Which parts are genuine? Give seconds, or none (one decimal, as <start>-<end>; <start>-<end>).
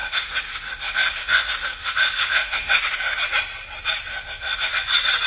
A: 3.2-4.1; 4.7-5.3